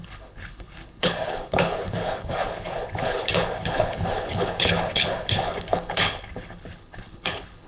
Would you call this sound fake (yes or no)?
yes